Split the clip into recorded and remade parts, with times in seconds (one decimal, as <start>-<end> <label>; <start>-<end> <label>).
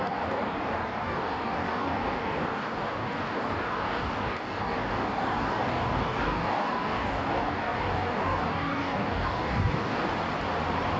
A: 0.0-10.1 remade; 10.1-11.0 recorded